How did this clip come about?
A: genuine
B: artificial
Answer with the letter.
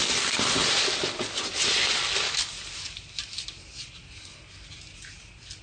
A